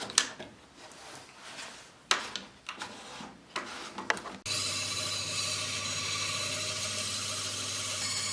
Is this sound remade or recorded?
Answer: recorded